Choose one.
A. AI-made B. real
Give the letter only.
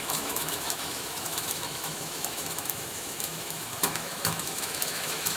A